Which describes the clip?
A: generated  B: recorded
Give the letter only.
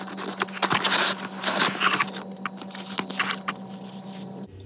B